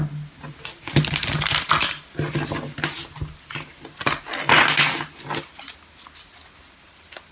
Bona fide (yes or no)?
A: yes